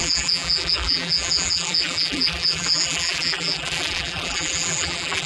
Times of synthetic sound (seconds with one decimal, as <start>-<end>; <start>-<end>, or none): 0.0-5.3